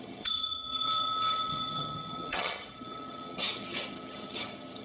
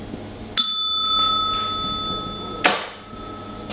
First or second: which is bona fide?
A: second